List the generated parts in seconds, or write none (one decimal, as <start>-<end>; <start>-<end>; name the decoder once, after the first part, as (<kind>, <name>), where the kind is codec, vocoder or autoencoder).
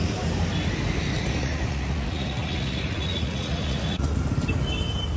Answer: 1.1-4.2 (vocoder, Vocos)